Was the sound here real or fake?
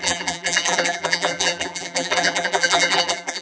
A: fake